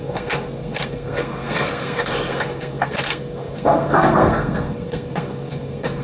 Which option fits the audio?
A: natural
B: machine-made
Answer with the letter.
B